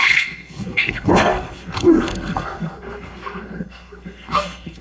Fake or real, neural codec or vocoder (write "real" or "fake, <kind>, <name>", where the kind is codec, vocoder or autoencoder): fake, codec, SNAC